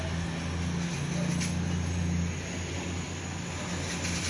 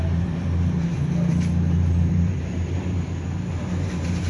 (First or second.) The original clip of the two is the first